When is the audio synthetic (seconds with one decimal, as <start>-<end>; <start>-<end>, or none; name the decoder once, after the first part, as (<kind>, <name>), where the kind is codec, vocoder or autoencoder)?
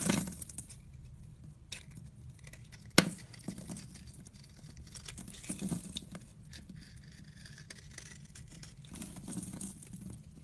none